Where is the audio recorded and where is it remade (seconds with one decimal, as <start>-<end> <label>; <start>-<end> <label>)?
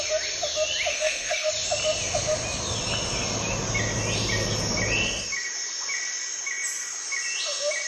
0.0-0.9 recorded; 0.9-1.5 remade; 1.5-7.9 recorded